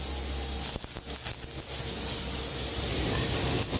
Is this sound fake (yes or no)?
no